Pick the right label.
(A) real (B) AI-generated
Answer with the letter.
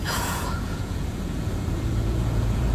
B